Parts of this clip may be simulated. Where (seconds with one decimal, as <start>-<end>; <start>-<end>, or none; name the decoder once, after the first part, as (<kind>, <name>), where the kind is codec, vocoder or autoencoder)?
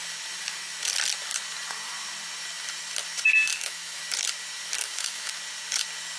3.5-4.0 (autoencoder, DAC-VAE); 4.8-5.3